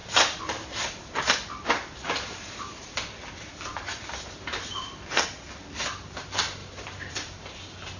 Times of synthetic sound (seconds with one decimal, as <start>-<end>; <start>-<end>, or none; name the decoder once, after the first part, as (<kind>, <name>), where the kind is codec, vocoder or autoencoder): 0.0-2.8 (vocoder, BigVGAN v2); 6.6-7.4